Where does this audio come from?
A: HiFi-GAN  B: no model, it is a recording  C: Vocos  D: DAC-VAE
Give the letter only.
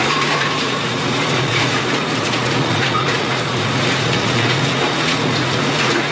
C